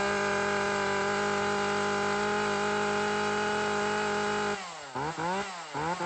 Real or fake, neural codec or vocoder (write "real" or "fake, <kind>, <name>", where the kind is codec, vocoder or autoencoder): real